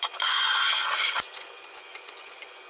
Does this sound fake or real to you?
fake